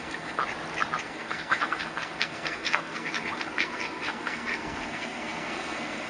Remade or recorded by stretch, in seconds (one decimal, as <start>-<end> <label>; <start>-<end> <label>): 0.0-0.4 remade; 0.4-1.0 recorded; 1.0-6.1 remade